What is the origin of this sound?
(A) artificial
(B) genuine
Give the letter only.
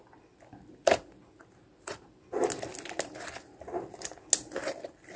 B